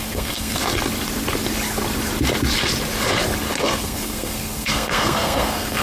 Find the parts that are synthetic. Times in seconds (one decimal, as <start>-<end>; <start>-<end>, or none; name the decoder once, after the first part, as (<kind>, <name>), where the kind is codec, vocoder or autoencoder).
0.0-0.6 (codec, SNAC); 3.6-5.8